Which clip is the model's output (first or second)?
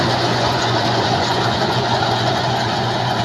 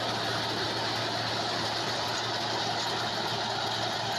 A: first